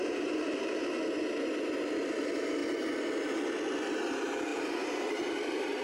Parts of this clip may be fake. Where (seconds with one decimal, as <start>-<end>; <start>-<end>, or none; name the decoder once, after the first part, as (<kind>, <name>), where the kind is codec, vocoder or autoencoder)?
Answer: 0.0-0.8 (vocoder, BigVGAN v2); 2.2-2.6; 4.0-5.8